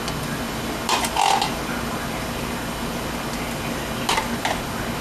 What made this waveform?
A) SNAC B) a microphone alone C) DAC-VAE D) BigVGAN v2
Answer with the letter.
B